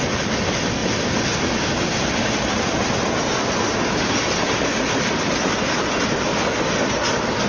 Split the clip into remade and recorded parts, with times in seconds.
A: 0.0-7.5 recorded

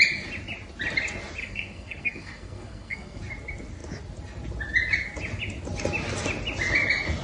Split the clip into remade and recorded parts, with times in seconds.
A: 0.0-1.4 recorded; 1.4-3.2 remade; 3.2-7.2 recorded

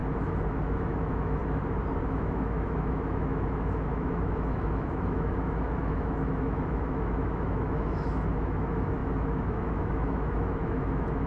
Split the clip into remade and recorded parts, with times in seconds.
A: 0.0-0.5 recorded; 0.5-1.4 remade; 1.4-2.1 recorded; 2.1-11.3 remade

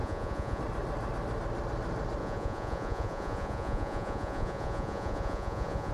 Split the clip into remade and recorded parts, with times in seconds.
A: 0.0-0.6 remade; 0.6-2.2 recorded; 2.2-5.9 remade